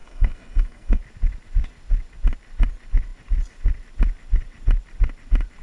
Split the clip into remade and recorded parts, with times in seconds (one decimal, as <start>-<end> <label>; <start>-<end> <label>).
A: 0.0-1.0 remade; 1.0-5.6 recorded